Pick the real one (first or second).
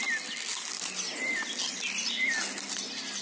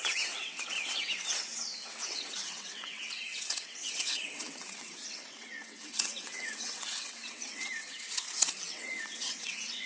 first